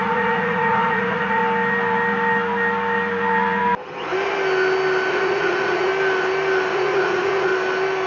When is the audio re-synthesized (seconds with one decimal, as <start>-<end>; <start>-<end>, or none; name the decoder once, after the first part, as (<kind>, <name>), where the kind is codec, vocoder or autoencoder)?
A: 0.0-1.4 (vocoder, Vocos); 5.1-5.9; 6.7-7.5